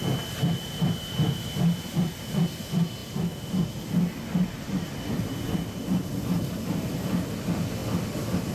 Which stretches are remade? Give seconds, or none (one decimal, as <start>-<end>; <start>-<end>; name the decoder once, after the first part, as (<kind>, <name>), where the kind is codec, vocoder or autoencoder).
none